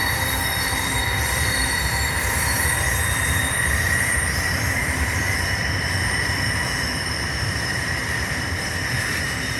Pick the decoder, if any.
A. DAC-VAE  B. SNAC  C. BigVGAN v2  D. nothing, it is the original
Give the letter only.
C